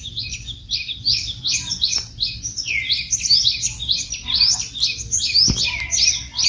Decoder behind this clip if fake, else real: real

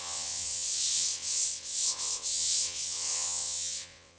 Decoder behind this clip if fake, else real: fake, vocoder, WaveNeXt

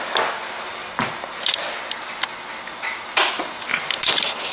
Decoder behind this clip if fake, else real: real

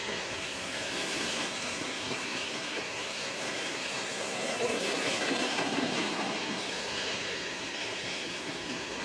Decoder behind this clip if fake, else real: fake, codec, SNAC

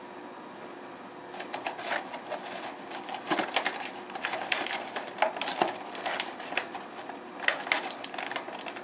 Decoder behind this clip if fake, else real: real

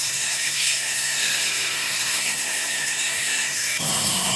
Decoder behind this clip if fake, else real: fake, codec, SNAC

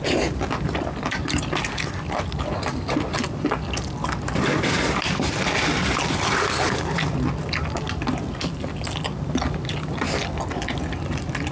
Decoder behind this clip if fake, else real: real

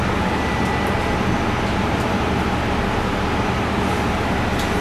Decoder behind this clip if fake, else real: real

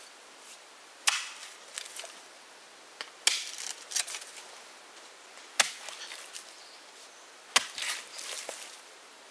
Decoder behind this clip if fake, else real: real